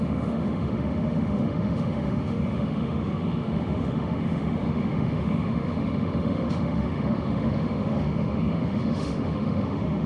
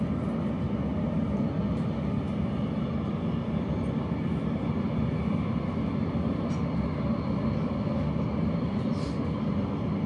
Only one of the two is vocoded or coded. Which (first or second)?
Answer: first